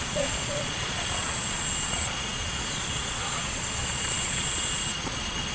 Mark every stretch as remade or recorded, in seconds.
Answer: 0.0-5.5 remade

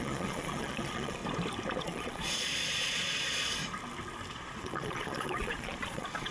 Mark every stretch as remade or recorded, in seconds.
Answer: 0.0-1.2 remade; 1.2-1.8 recorded; 1.8-3.6 remade; 3.6-4.3 recorded; 4.3-6.3 remade

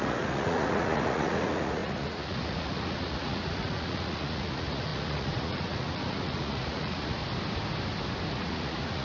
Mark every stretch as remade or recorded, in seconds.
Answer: 0.0-7.2 remade; 7.2-8.3 recorded; 8.3-9.0 remade

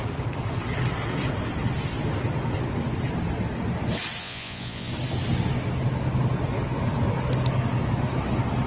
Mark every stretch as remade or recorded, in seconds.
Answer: 0.0-4.2 recorded; 4.2-4.9 remade; 4.9-8.7 recorded

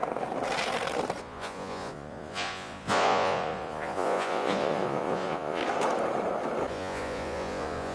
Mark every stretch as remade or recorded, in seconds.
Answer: 0.0-1.2 recorded; 1.2-5.6 remade; 5.6-6.7 recorded; 6.7-7.9 remade